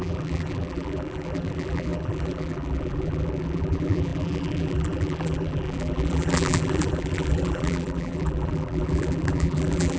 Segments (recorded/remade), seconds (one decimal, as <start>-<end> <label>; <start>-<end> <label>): 0.0-10.0 remade